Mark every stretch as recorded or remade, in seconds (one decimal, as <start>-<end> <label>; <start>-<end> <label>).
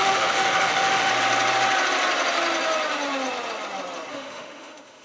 0.0-1.1 remade; 1.1-4.1 recorded; 4.1-5.0 remade